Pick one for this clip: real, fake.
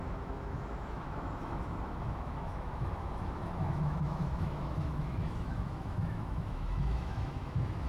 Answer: fake